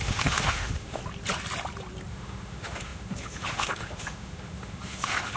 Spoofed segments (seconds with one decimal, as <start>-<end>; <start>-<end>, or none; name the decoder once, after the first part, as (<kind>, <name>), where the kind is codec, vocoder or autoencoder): 0.0-1.0 (autoencoder, DAC-VAE); 2.1-5.4